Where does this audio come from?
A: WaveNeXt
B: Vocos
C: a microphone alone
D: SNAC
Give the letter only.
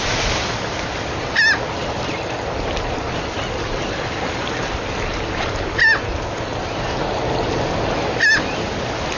C